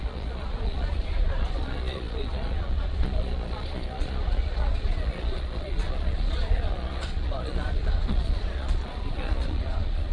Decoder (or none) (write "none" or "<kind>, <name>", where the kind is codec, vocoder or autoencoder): vocoder, Vocos